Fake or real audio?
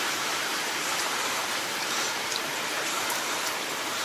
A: fake